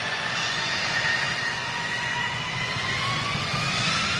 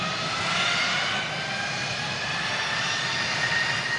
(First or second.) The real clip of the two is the second